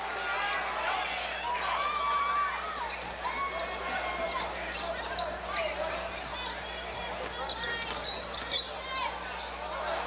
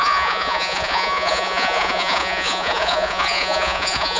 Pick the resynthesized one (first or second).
second